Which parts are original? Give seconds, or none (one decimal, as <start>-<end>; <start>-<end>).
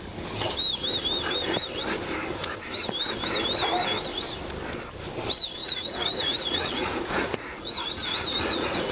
0.0-5.6